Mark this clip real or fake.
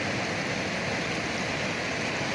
real